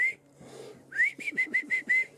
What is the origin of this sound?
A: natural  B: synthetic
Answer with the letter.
A